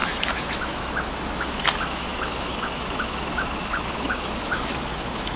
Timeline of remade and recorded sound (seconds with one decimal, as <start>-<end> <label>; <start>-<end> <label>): 0.0-5.4 remade